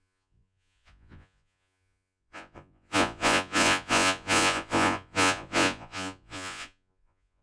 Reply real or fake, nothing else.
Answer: fake